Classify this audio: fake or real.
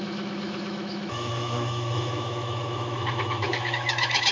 fake